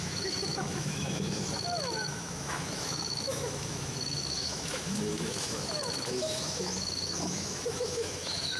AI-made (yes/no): yes